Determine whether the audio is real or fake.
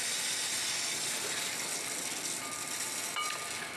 real